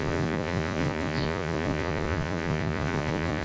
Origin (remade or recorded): remade